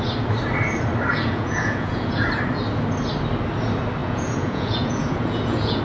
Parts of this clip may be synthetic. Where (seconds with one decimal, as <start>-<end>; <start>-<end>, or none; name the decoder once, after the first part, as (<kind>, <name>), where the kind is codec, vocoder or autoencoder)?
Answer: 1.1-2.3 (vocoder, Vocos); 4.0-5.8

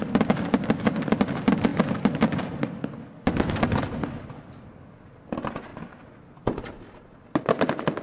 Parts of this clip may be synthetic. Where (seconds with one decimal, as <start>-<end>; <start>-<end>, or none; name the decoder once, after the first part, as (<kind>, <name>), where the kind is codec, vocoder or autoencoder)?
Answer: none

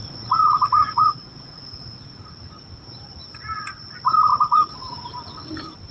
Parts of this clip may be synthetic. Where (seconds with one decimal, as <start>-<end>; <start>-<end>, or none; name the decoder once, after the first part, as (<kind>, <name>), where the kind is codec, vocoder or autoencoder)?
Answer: 0.0-2.3 (vocoder, Vocos); 4.3-5.0

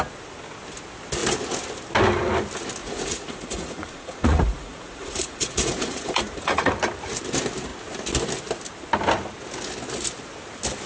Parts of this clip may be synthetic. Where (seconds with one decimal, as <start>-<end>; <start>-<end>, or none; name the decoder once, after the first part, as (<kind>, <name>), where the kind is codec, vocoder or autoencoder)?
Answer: 2.8-6.7 (vocoder, Vocos)

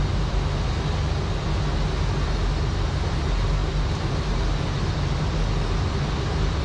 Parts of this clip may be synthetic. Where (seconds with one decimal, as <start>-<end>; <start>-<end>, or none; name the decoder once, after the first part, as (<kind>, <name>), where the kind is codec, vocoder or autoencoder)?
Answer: none

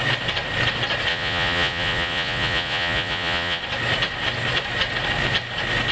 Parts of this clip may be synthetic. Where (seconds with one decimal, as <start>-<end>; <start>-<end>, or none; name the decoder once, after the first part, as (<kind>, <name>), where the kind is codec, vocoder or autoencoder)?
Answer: 1.1-3.6 (vocoder, Vocos)

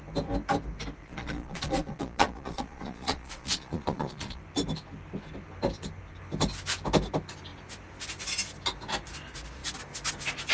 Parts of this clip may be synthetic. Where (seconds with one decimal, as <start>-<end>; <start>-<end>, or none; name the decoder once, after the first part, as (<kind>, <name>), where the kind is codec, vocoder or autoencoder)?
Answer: 1.0-4.4 (vocoder, Vocos)

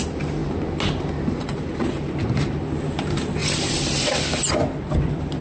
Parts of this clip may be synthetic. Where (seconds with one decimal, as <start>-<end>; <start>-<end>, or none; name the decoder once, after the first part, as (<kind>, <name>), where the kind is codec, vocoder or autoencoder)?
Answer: none